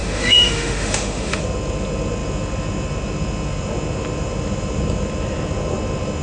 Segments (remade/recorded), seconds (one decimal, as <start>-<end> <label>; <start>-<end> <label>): 0.0-1.4 remade; 1.4-6.2 recorded